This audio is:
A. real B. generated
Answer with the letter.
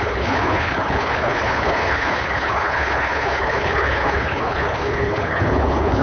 B